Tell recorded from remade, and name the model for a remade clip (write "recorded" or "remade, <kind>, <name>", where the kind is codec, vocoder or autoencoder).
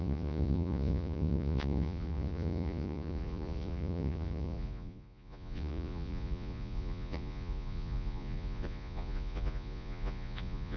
remade, vocoder, Vocos